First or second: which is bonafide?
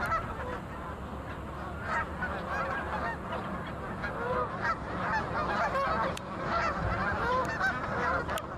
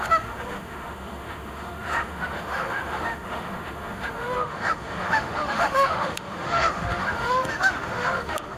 first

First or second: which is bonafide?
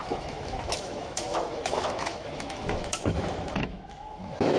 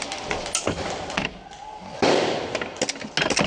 second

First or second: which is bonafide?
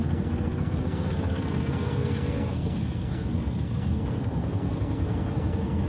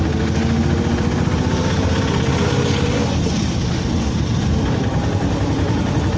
second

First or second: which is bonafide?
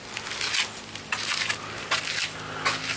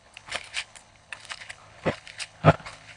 first